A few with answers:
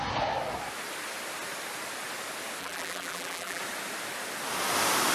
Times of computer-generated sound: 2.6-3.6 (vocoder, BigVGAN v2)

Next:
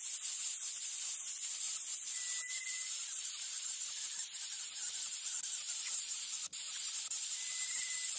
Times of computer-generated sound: none

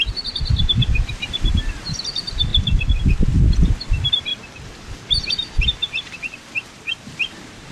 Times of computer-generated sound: 0.0-2.5 (vocoder, BigVGAN v2); 3.8-4.3; 5.2-7.7